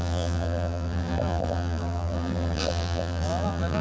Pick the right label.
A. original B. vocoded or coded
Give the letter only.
B